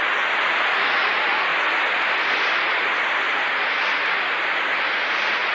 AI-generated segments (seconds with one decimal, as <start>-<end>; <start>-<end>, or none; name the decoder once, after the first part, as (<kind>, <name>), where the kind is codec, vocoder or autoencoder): 0.0-1.5 (vocoder, Vocos); 4.8-5.5

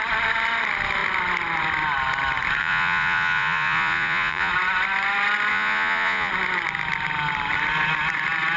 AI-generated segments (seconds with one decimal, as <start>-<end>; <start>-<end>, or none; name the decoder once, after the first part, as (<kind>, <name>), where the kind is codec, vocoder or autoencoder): 2.6-4.5 (vocoder, Vocos); 5.5-6.3

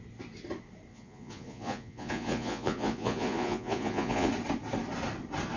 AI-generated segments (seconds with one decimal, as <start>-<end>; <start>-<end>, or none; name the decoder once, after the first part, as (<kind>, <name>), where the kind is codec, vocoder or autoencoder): 0.9-4.3 (vocoder, Vocos)